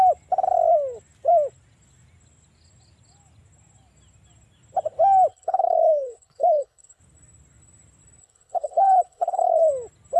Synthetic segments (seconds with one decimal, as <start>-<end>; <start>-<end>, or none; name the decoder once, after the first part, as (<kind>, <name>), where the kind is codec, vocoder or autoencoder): 5.3-7.0 (codec, HILCodec); 8.2-9.7